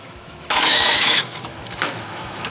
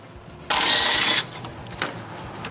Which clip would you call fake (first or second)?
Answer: first